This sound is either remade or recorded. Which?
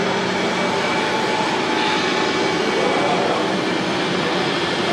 recorded